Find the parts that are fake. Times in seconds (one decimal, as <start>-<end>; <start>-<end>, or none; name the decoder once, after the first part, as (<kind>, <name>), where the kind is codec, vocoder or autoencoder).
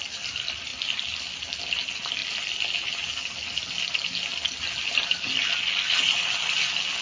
none